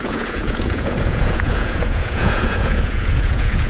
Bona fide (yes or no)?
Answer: no